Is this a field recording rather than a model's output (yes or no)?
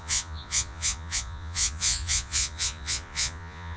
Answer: no